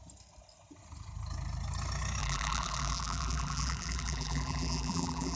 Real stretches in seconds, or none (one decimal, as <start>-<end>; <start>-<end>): 0.0-2.2